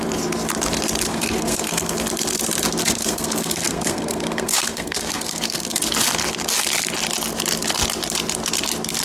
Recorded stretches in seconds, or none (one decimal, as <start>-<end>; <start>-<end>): 0.0-1.1; 1.9-2.8; 5.8-9.0